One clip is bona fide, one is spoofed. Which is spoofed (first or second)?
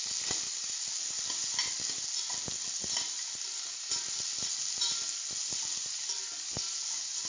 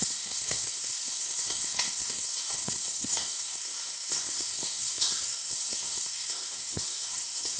second